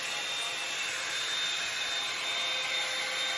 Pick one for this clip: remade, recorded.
recorded